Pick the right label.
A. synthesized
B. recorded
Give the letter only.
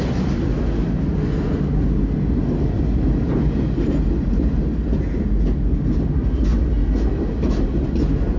B